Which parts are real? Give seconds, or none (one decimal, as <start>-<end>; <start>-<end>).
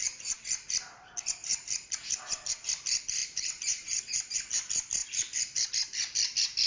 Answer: 0.0-1.4; 2.5-3.2; 4.0-6.7